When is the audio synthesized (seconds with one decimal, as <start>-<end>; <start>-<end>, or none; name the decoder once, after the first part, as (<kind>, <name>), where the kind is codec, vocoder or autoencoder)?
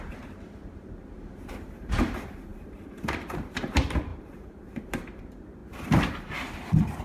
0.0-5.6 (vocoder, BigVGAN v2)